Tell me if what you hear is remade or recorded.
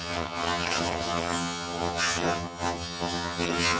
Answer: remade